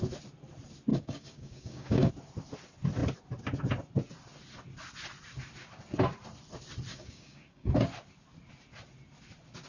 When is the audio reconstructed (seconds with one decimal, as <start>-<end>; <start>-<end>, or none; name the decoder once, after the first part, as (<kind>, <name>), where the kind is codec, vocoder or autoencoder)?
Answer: 0.9-2.1 (codec, DAC); 6.9-7.7